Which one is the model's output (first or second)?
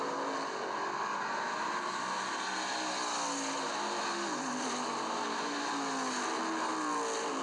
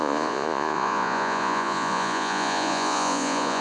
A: second